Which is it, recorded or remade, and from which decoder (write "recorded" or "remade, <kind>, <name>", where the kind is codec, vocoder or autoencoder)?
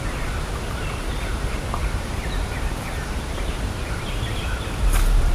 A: remade, vocoder, BigVGAN v2